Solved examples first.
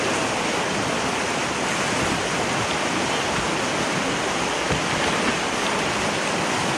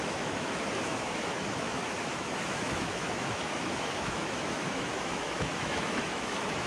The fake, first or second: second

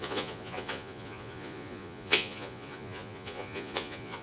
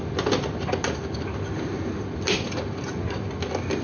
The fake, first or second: first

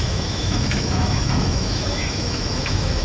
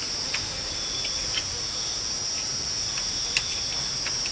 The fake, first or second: first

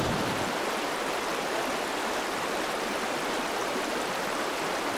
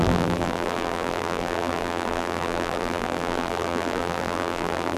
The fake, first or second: second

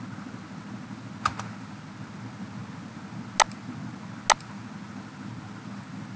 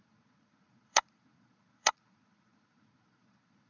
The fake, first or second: second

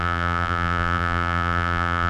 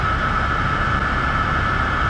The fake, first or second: first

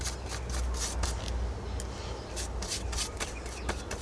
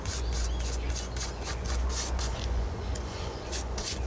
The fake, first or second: second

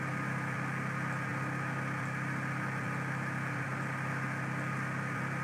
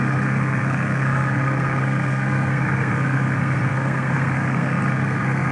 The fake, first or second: second